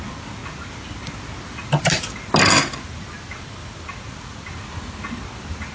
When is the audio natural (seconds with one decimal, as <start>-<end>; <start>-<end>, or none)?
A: 0.0-5.7